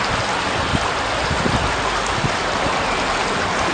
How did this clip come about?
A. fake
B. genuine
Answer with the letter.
B